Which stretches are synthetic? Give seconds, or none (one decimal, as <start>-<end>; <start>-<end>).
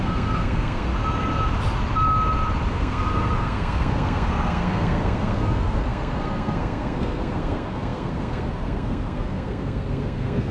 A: 0.0-0.9; 2.7-10.5